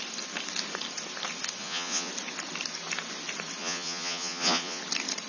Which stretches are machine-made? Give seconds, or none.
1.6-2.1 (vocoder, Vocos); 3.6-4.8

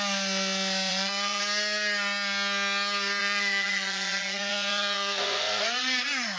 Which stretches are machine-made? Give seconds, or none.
0.9-1.4 (vocoder, Vocos); 3.2-6.4